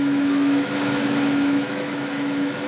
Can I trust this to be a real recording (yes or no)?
no